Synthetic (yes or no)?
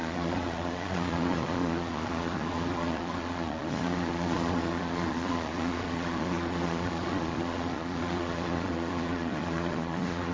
yes